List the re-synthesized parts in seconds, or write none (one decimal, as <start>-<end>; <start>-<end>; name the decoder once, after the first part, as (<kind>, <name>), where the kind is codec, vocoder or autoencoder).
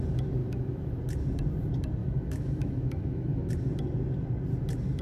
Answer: 0.4-1.0 (autoencoder, DAC-VAE); 2.0-3.5